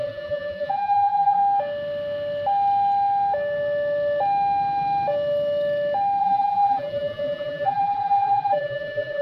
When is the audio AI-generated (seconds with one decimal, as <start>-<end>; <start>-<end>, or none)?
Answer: 0.0-1.4; 6.2-9.2